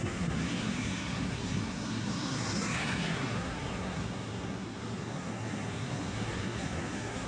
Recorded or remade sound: remade